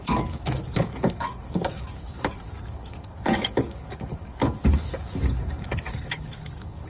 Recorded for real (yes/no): no